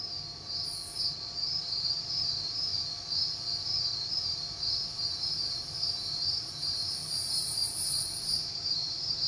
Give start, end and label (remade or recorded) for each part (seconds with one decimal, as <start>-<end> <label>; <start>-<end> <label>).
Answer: 0.0-0.7 remade; 0.7-1.6 recorded; 1.6-2.7 remade; 2.7-4.1 recorded; 4.1-9.3 remade